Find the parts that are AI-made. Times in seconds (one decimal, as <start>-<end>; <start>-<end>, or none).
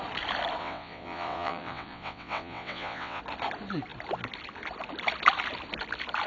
0.6-3.2